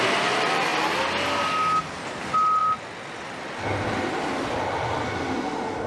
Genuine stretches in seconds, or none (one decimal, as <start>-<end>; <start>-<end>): 0.0-5.9